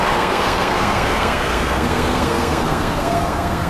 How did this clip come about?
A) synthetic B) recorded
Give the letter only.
A